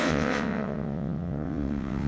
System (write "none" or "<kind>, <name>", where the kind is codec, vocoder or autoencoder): vocoder, WaveNeXt